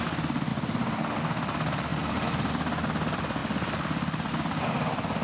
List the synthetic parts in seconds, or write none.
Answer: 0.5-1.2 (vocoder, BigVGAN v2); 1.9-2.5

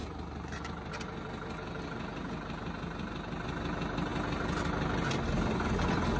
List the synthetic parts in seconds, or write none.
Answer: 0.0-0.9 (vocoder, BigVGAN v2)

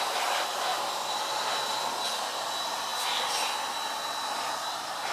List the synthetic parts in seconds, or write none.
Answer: none